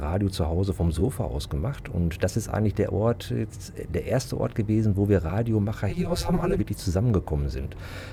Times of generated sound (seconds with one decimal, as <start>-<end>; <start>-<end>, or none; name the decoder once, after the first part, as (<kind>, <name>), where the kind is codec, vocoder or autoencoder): 5.9-6.6 (vocoder, BigVGAN v2)